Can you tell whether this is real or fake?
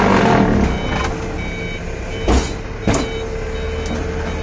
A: real